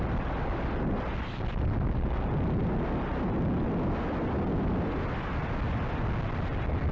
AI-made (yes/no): no